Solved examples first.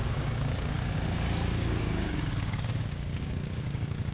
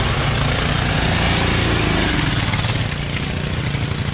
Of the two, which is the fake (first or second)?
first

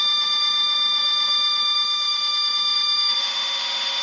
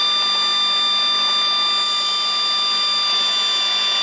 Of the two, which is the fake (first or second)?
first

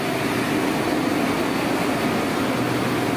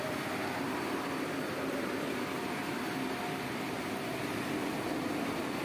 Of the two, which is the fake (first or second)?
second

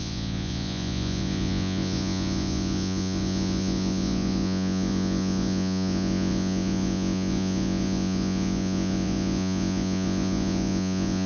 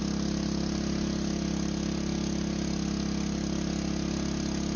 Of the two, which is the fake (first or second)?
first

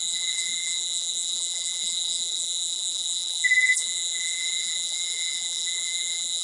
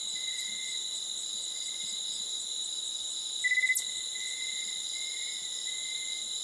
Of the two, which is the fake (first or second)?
first